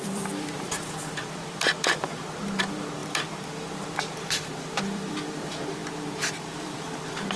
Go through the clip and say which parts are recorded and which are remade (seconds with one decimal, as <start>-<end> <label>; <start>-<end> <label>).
0.0-7.4 remade